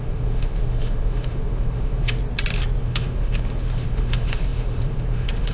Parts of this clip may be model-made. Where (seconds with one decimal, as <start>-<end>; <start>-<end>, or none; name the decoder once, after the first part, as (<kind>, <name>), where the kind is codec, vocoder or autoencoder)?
0.0-2.2 (autoencoder, DAC-VAE); 2.8-5.5